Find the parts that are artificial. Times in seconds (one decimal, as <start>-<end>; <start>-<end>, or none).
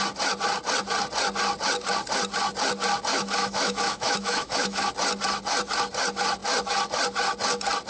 3.1-4.9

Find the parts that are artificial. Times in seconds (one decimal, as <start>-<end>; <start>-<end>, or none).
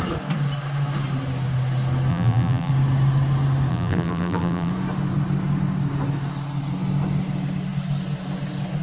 2.1-2.7; 3.7-4.7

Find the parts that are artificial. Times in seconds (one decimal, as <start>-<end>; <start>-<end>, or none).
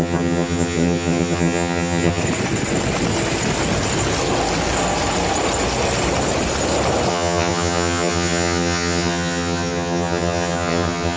0.0-2.2; 7.1-11.2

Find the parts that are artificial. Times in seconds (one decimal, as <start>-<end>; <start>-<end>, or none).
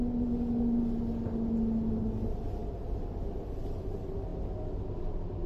none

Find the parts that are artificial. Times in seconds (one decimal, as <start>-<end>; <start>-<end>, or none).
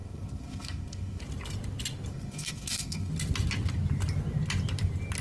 0.0-1.2; 2.1-3.1